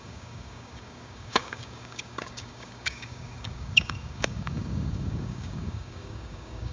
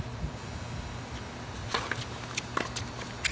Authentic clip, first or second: second